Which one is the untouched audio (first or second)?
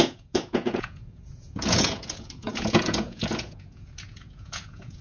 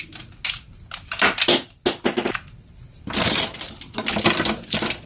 second